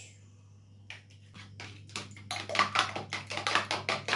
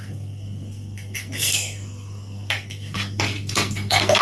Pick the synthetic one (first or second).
second